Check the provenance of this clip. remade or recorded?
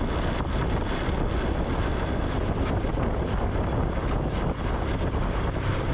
recorded